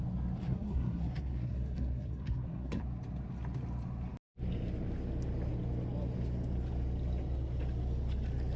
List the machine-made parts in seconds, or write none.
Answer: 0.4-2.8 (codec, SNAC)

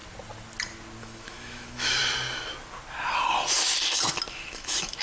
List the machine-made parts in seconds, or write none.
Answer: 1.0-2.0 (autoencoder, DAC-VAE); 4.3-5.0

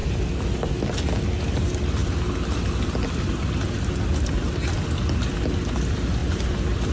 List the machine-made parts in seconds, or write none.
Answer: none

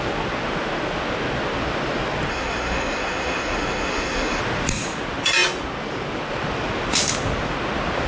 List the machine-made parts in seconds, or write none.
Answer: 2.3-4.4 (codec, SNAC)

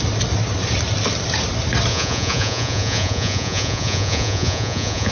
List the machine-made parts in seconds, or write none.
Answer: 1.9-5.1 (vocoder, Vocos)

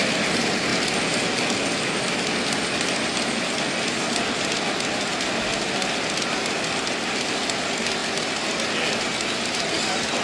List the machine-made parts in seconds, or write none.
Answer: none

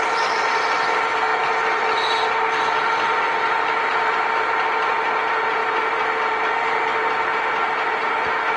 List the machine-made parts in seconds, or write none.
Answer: 5.6-6.8 (vocoder, BigVGAN v2)

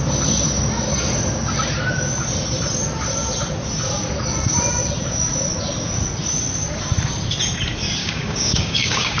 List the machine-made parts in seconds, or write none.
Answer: 8.0-9.2 (codec, DAC)